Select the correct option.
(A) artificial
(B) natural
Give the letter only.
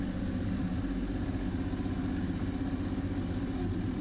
B